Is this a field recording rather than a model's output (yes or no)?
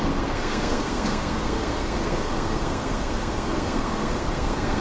no